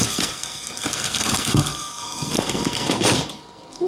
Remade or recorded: remade